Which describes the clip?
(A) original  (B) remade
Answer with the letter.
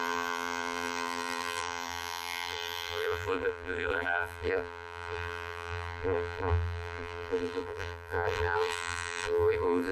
B